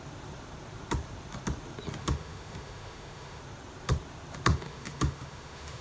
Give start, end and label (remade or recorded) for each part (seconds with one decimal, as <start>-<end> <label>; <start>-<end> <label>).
0.0-2.0 recorded; 2.0-3.4 remade; 3.4-4.5 recorded; 4.5-5.8 remade

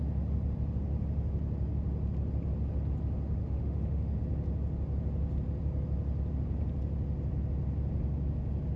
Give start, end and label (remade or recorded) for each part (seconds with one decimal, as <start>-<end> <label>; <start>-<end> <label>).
0.0-3.4 recorded; 3.4-4.2 remade; 4.2-8.8 recorded

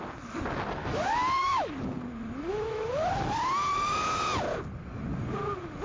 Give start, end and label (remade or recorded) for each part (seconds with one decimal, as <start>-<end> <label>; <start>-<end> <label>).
0.0-0.8 recorded; 0.8-1.7 remade; 1.7-2.5 recorded; 2.5-3.1 remade; 3.1-5.8 recorded

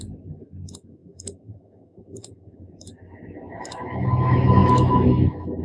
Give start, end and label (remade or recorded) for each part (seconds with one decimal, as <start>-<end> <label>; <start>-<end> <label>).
0.0-5.6 remade